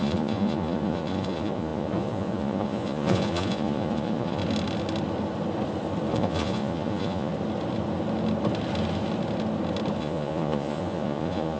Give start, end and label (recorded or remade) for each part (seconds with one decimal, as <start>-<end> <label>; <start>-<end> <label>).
0.0-4.4 remade; 4.4-6.1 recorded; 6.1-7.3 remade; 7.3-10.0 recorded; 10.0-11.6 remade